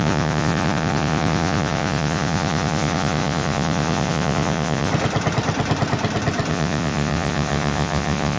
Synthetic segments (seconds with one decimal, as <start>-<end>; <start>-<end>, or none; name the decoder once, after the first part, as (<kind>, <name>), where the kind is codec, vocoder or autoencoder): 0.0-4.9 (vocoder, Vocos); 6.5-8.4